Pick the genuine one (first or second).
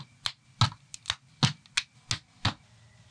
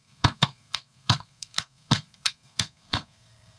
first